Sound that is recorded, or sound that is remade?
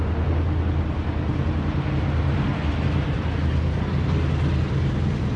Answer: recorded